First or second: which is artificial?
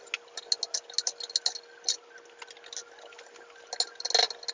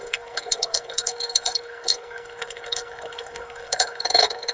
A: second